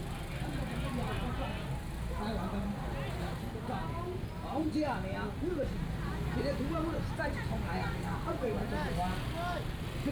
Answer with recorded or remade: recorded